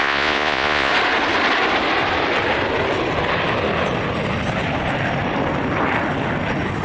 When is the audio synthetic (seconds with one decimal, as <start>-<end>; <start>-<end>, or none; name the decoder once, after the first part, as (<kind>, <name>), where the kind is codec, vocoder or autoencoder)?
0.0-0.9 (vocoder, Vocos)